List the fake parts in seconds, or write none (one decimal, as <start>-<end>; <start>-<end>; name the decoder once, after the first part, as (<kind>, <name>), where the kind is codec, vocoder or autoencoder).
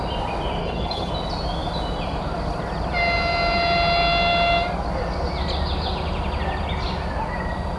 0.6-1.1 (codec, HILCodec)